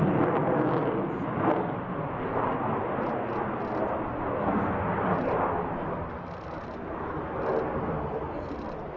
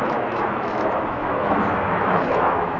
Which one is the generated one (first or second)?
second